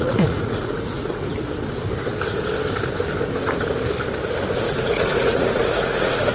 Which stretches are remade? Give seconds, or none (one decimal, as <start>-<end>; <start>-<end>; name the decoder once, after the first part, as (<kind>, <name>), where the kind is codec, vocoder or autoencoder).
0.0-1.2 (vocoder, Vocos); 4.5-6.3